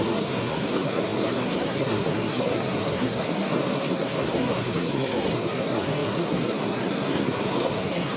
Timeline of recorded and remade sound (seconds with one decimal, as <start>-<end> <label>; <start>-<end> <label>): 0.0-8.2 remade